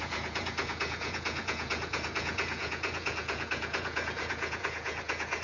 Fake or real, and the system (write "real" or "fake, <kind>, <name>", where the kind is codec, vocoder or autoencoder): fake, vocoder, Vocos